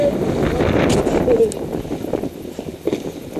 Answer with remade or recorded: recorded